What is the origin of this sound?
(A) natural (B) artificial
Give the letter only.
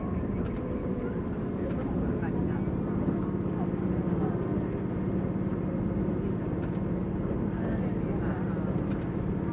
A